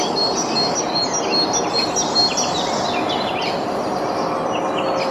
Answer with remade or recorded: recorded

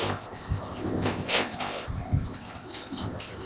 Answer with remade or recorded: remade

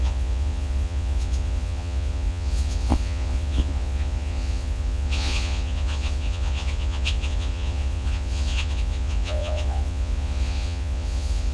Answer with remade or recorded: remade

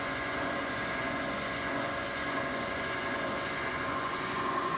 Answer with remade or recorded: remade